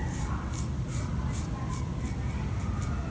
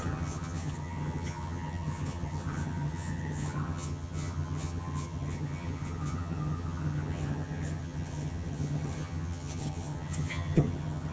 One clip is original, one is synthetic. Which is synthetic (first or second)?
second